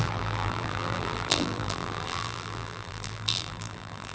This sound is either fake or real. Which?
fake